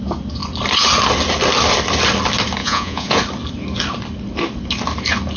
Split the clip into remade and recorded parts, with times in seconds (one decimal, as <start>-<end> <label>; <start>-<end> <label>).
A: 0.0-2.6 recorded; 2.6-3.2 remade; 3.2-5.4 recorded